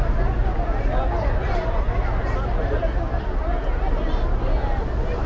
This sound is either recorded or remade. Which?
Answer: recorded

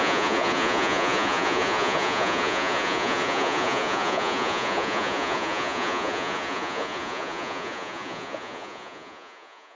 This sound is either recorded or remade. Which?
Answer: remade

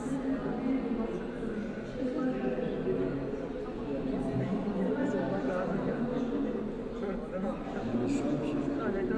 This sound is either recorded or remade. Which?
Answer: recorded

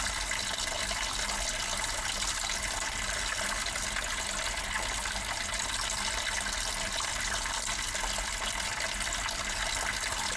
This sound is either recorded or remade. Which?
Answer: recorded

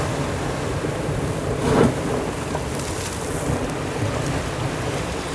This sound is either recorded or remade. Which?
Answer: recorded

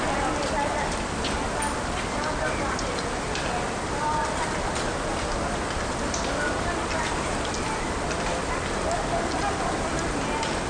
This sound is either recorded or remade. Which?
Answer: recorded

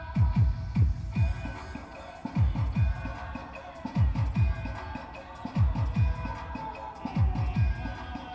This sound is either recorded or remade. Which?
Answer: recorded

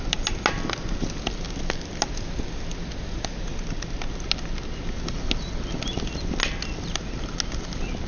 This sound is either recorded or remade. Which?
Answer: recorded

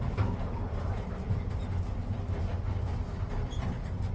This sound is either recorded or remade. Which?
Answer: recorded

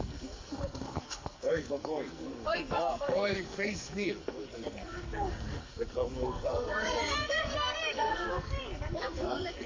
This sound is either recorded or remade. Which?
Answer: remade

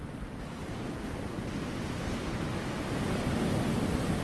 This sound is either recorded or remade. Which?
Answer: recorded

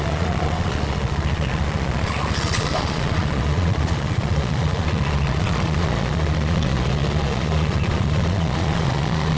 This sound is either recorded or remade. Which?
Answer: remade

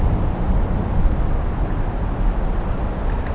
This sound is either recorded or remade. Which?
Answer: recorded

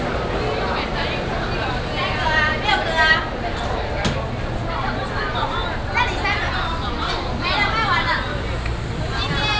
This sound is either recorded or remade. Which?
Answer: recorded